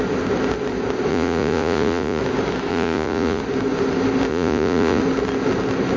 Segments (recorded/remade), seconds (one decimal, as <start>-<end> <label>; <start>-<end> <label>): 0.0-1.1 recorded; 1.1-2.2 remade; 2.2-2.7 recorded; 2.7-3.4 remade; 3.4-4.3 recorded; 4.3-5.0 remade; 5.0-6.0 recorded